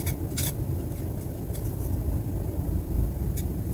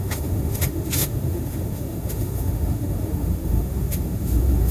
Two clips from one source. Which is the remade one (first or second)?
second